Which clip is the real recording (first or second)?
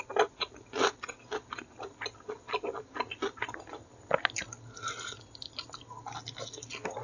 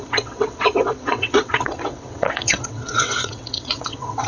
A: first